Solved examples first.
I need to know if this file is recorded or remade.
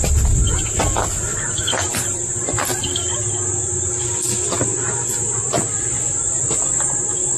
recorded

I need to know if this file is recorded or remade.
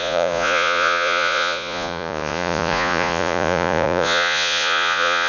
remade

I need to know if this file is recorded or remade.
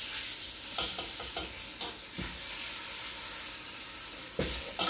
recorded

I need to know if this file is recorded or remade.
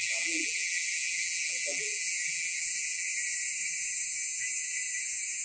remade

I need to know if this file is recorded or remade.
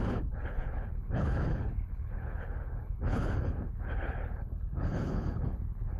remade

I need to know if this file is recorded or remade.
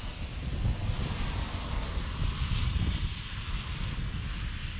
recorded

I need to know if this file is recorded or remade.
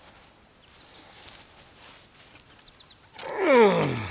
recorded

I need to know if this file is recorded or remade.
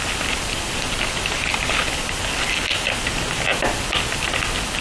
recorded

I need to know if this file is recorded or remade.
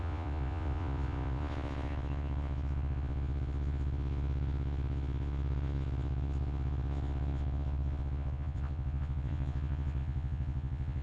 remade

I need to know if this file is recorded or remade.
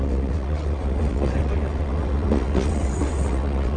remade